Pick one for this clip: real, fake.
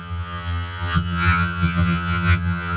fake